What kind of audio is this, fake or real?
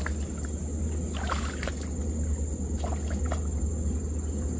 real